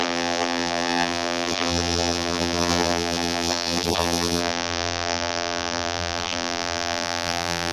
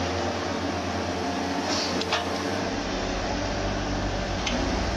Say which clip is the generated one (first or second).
first